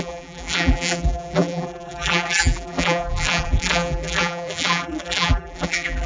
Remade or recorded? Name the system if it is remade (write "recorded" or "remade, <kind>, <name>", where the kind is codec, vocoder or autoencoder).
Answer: remade, vocoder, BigVGAN v2